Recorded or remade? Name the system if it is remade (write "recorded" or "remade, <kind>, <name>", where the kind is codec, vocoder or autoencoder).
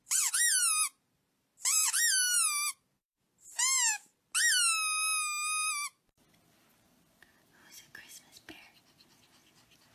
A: recorded